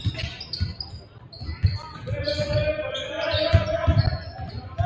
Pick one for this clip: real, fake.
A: real